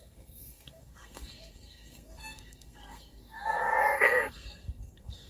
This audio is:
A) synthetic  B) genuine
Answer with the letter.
A